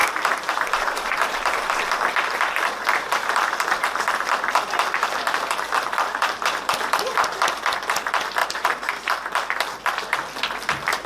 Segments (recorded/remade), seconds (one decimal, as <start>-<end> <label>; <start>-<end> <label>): 0.0-1.7 remade; 1.7-8.4 recorded; 8.4-8.9 remade; 8.9-11.1 recorded